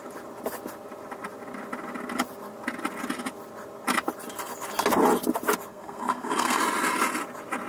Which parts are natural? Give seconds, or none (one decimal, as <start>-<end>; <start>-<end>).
0.0-5.7; 6.6-7.7